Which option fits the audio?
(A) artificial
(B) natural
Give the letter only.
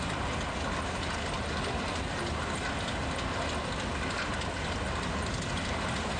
B